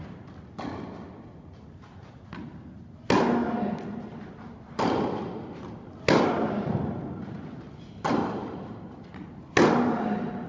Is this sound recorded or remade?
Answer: recorded